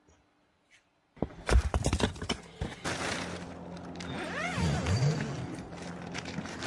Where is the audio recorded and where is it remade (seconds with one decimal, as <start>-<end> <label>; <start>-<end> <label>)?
0.0-1.3 recorded; 1.3-2.1 remade; 2.1-6.7 recorded

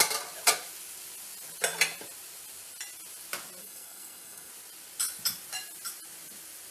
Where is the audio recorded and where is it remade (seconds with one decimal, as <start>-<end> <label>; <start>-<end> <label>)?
0.0-3.6 recorded; 3.6-4.5 remade; 4.5-6.7 recorded

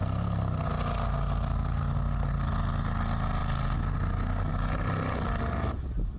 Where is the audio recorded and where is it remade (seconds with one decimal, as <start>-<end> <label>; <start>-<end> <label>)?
0.0-0.7 remade; 0.7-6.2 recorded

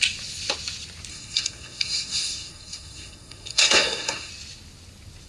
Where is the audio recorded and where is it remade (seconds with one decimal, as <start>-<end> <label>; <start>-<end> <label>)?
0.0-1.1 recorded; 1.1-4.3 remade; 4.3-5.3 recorded

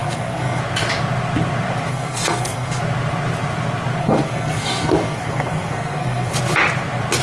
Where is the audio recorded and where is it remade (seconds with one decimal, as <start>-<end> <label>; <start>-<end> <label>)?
0.0-0.6 remade; 0.6-1.9 recorded; 1.9-2.8 remade; 2.8-4.0 recorded; 4.0-6.4 remade; 6.4-7.2 recorded